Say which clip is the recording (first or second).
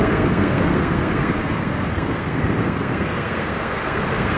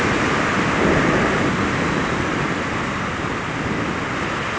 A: second